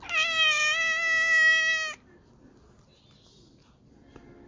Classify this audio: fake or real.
real